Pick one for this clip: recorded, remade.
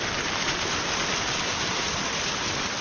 recorded